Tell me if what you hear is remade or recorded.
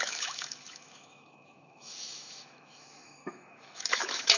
remade